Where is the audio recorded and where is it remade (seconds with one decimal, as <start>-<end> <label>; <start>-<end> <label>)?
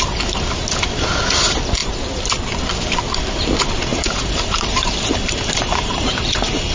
0.0-1.8 recorded; 1.8-2.6 remade; 2.6-3.9 recorded; 3.9-6.7 remade